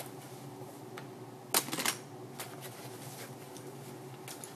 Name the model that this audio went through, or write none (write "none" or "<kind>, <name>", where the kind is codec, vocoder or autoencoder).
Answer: none